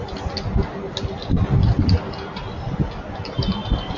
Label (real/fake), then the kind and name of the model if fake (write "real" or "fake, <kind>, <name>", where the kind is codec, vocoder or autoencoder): real